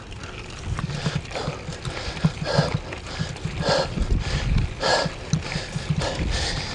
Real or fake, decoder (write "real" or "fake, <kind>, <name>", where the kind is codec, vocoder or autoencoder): real